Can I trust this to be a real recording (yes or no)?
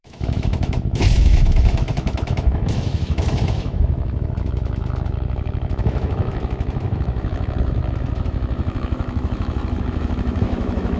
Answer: no